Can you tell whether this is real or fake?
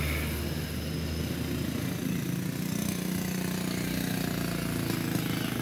real